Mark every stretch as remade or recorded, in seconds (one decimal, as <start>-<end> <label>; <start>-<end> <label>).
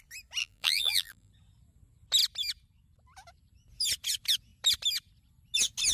0.0-0.4 recorded; 0.4-1.3 remade; 1.3-5.9 recorded